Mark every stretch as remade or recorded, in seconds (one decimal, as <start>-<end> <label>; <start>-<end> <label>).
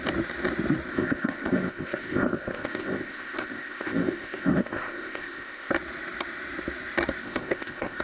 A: 0.0-0.9 recorded; 0.9-5.7 remade; 5.7-7.2 recorded; 7.2-8.0 remade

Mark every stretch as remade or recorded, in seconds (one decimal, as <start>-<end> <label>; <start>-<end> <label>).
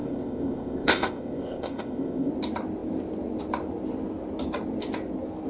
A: 0.0-2.3 remade; 2.3-5.5 recorded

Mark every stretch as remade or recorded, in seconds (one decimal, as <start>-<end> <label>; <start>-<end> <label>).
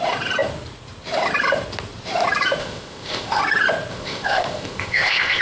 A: 0.0-2.6 recorded; 2.6-3.4 remade; 3.4-3.9 recorded; 3.9-5.4 remade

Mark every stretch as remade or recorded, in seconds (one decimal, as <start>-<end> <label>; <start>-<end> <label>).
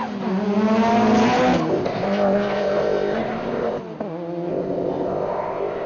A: 0.0-1.7 recorded; 1.7-3.8 remade; 3.8-4.5 recorded; 4.5-5.9 remade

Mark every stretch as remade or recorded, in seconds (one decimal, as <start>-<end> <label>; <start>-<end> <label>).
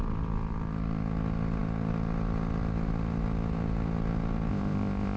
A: 0.0-4.5 recorded; 4.5-5.2 remade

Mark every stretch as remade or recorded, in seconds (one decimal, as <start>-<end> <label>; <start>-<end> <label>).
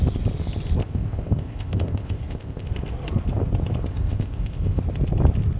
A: 0.0-0.8 recorded; 0.8-2.7 remade; 2.7-3.9 recorded; 3.9-4.8 remade; 4.8-5.6 recorded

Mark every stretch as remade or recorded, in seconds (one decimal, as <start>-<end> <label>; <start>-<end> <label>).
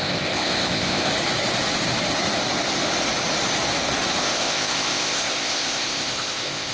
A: 0.0-1.1 remade; 1.1-4.2 recorded; 4.2-6.7 remade